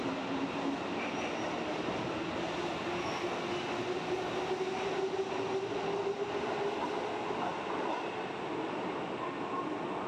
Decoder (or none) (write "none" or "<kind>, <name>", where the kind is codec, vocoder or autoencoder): none